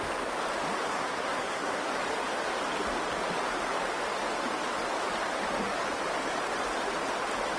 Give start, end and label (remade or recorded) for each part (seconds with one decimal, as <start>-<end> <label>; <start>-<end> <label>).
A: 0.0-0.9 recorded; 0.9-1.9 remade; 1.9-7.6 recorded